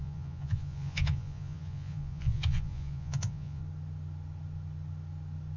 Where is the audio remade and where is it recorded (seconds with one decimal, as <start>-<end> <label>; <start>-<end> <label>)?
0.0-3.6 remade; 3.6-5.6 recorded